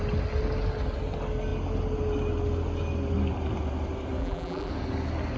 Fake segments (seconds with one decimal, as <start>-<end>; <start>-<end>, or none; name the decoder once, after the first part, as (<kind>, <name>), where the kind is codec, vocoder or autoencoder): 4.2-4.7 (vocoder, BigVGAN v2)